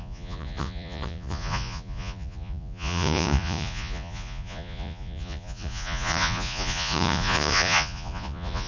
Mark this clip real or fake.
fake